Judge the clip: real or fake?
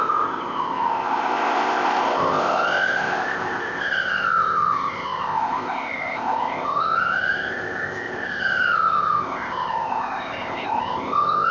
fake